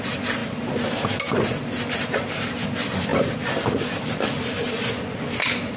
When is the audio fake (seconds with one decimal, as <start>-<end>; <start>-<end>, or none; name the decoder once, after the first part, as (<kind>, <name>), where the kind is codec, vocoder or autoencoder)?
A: none